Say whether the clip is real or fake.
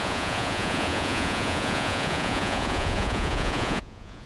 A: fake